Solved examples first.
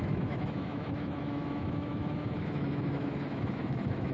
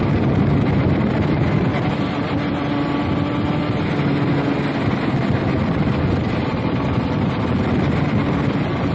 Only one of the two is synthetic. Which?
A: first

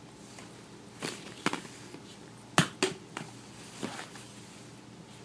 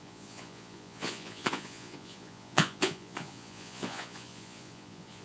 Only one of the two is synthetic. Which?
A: second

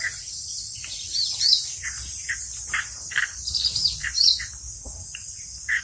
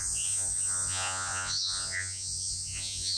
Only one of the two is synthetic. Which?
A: second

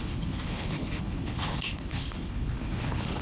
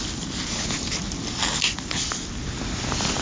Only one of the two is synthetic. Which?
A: first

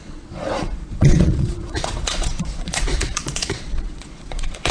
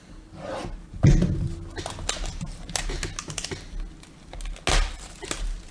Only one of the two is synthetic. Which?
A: first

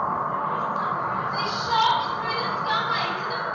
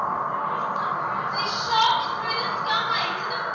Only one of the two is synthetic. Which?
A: first